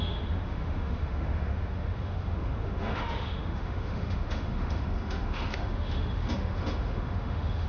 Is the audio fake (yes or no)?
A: yes